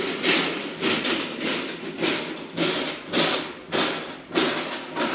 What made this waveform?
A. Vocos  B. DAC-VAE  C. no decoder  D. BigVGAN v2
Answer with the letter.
C